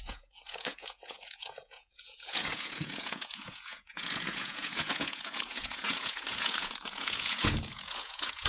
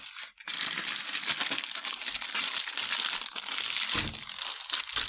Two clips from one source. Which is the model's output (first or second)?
first